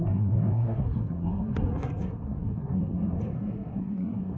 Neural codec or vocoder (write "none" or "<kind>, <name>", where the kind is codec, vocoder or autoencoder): codec, SNAC